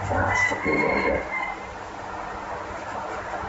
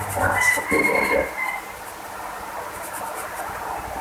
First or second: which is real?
first